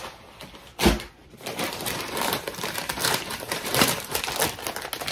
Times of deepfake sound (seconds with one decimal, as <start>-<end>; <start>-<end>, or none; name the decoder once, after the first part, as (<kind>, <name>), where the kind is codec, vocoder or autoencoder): 1.2-4.3 (vocoder, BigVGAN v2)